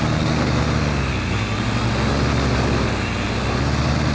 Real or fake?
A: real